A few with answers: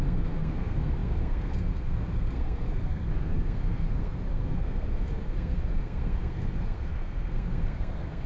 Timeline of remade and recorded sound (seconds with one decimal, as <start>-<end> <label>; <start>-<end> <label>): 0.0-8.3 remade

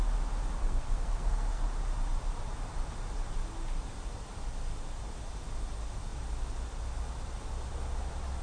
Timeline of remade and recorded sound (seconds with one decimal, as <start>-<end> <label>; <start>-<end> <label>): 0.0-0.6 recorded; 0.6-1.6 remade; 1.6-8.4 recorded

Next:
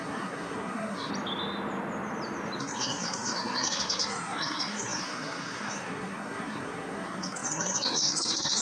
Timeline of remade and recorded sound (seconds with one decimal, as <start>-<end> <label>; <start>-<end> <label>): 0.0-1.1 remade; 1.1-2.6 recorded; 2.6-8.6 remade

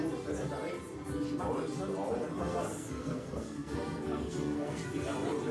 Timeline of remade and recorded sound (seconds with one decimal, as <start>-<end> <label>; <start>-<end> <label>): 0.0-2.4 recorded; 2.4-4.9 remade; 4.9-5.5 recorded